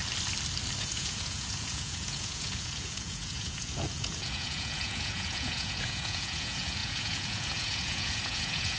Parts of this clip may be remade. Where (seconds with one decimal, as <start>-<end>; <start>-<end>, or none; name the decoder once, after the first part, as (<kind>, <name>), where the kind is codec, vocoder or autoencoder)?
0.8-8.8 (vocoder, Vocos)